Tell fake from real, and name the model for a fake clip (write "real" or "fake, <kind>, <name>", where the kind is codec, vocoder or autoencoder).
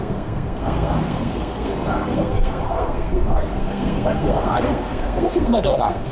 fake, codec, SNAC